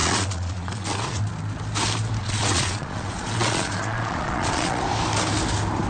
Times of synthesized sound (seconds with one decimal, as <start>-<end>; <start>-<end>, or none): 0.0-1.2; 2.2-4.8